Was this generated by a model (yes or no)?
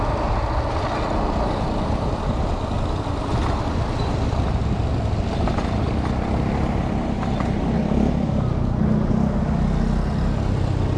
no